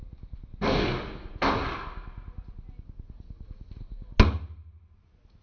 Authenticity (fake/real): real